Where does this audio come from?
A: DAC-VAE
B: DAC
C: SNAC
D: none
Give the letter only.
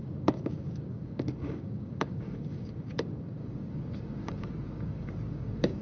B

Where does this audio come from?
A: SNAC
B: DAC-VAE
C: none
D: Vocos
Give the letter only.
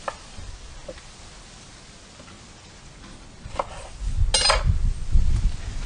C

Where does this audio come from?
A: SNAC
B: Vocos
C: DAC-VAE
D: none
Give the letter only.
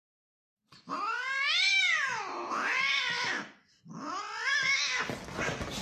D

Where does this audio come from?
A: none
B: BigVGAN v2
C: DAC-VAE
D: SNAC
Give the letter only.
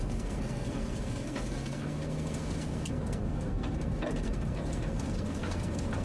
D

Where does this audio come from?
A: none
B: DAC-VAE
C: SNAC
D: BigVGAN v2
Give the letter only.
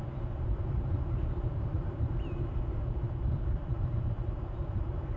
D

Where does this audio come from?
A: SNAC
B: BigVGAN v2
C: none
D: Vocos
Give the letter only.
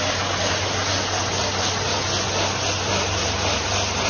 C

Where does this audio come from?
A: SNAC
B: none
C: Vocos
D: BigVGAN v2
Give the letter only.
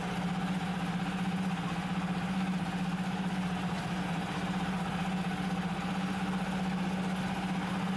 B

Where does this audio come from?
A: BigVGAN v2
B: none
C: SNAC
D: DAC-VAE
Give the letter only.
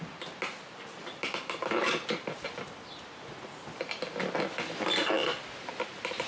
B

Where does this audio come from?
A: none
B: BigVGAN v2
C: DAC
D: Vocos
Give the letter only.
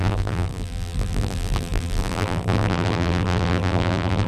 B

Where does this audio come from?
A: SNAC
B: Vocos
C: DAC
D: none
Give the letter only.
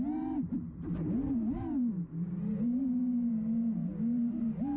D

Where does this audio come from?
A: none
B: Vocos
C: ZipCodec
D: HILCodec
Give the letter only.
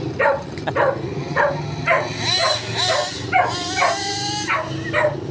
A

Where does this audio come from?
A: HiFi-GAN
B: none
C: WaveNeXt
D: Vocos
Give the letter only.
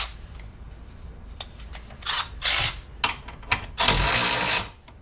B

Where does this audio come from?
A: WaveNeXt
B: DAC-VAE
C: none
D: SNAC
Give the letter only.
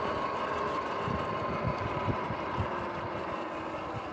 C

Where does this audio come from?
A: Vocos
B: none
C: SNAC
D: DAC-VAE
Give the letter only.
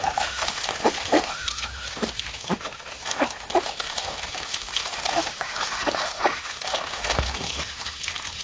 D